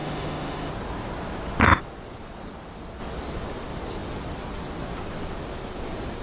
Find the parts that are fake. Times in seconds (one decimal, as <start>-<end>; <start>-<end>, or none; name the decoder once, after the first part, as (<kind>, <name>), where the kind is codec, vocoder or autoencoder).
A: 0.0-0.7 (autoencoder, DAC-VAE)